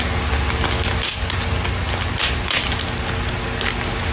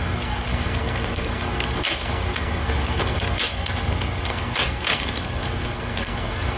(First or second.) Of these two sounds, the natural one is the first